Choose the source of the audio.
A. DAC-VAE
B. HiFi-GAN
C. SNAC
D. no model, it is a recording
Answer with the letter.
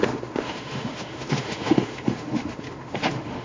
A